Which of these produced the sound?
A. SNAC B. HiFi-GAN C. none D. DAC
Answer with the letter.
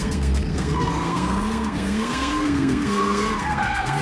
A